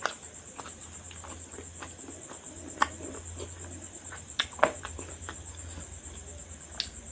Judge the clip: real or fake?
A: real